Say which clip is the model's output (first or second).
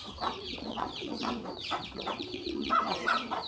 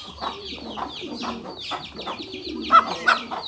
first